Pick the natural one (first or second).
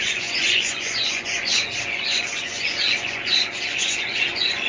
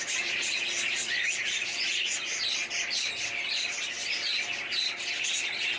second